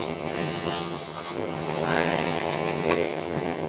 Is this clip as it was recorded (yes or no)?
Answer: no